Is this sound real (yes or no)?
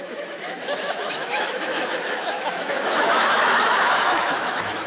no